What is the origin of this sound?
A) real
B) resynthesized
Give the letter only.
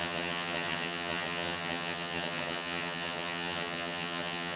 B